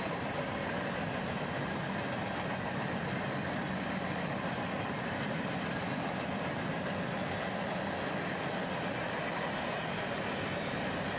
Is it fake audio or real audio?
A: real